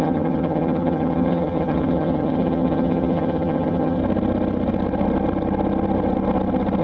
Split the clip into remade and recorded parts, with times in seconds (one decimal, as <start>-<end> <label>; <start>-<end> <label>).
0.0-4.0 remade; 4.0-6.8 recorded